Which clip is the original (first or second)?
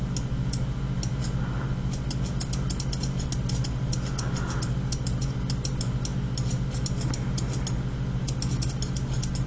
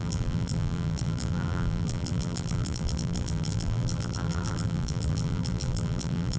first